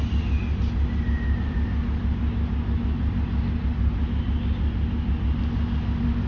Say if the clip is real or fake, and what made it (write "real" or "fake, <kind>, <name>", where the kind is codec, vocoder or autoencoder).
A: real